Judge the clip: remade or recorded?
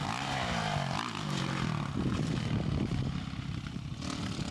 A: recorded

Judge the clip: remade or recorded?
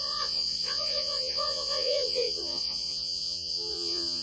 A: remade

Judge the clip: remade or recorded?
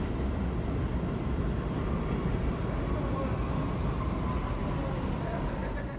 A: recorded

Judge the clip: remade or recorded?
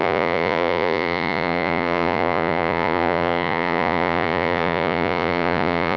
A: remade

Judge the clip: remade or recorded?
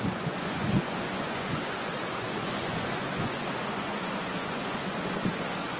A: remade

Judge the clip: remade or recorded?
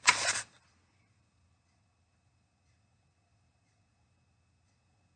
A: remade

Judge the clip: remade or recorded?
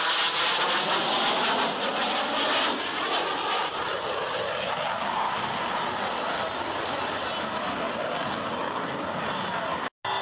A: recorded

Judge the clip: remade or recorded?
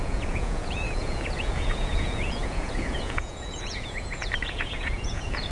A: remade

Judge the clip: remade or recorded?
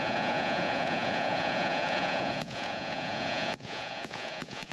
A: remade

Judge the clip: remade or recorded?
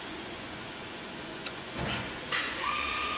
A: remade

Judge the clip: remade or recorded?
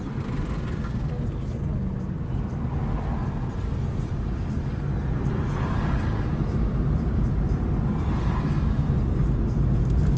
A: recorded